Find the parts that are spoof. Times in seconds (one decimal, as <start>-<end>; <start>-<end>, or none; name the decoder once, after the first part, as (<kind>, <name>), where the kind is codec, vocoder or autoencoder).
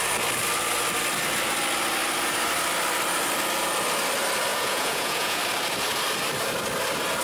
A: 4.5-5.4 (vocoder, Vocos)